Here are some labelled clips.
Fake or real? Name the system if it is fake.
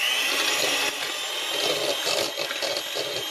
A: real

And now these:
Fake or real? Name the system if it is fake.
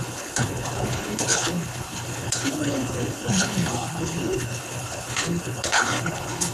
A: fake, codec, HILCodec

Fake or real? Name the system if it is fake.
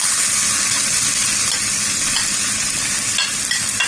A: real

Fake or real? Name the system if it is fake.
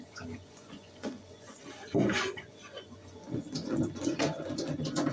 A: fake, vocoder, Vocos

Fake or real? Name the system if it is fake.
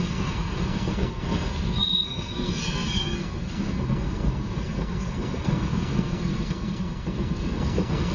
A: fake, codec, SNAC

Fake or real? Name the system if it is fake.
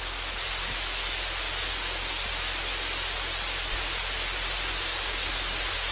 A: real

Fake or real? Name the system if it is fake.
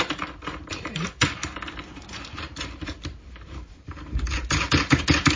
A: fake, vocoder, BigVGAN v2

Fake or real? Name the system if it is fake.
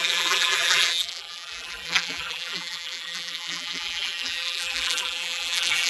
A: fake, vocoder, BigVGAN v2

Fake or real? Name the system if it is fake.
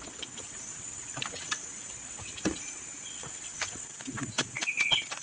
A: fake, vocoder, WaveNeXt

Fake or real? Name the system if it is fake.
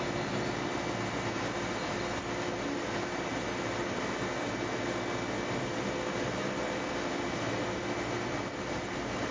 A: real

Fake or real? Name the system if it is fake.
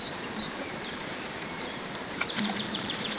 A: fake, vocoder, BigVGAN v2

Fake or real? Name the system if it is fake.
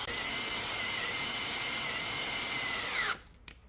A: real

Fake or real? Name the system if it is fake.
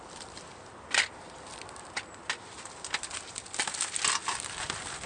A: real